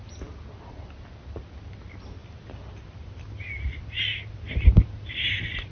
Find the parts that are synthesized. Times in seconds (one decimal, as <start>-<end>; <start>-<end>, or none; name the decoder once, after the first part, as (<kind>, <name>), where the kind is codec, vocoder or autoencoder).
2.2-3.2 (vocoder, BigVGAN v2); 4.2-5.1